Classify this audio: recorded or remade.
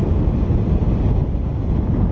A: recorded